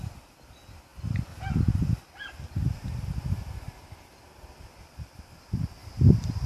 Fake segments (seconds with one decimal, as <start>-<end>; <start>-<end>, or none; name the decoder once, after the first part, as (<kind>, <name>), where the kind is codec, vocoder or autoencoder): none